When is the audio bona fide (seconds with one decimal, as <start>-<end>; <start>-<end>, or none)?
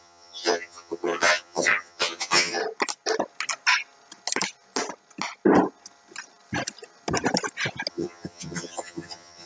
2.6-7.9